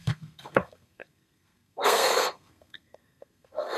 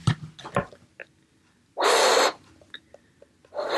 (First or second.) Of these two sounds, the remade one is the first